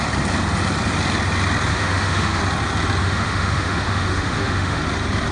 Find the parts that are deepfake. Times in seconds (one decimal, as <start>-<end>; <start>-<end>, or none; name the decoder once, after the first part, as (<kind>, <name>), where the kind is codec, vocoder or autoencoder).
1.7-2.4 (autoencoder, DAC-VAE); 3.0-4.8